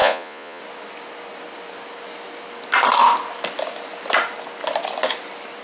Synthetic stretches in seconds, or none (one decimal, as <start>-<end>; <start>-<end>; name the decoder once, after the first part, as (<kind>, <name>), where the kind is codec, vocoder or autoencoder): 0.0-0.6 (vocoder, Vocos)